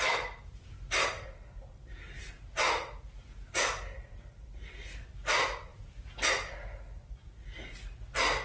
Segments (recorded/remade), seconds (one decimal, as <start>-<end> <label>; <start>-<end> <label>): 0.0-8.4 recorded